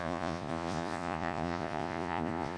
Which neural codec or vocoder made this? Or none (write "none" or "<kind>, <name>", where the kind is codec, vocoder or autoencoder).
vocoder, Vocos